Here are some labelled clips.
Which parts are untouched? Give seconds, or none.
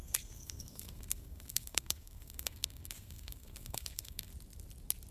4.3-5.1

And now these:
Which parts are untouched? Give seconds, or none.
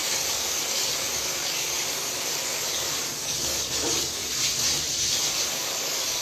4.2-5.5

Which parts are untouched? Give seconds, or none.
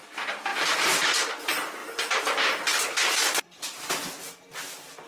0.0-0.5; 1.3-1.8; 3.1-5.1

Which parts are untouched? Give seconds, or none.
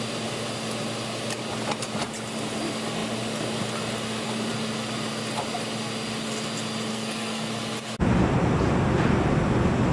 0.0-6.9; 7.5-9.9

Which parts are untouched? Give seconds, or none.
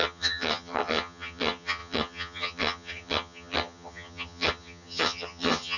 none